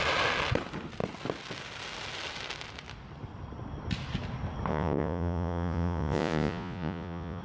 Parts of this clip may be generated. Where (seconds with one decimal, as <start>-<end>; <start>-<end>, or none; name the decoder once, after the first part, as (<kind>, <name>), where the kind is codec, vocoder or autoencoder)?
4.7-7.4 (vocoder, Vocos)